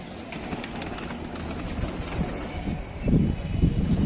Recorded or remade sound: recorded